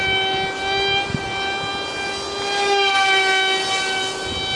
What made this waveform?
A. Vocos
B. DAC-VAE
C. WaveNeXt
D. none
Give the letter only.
D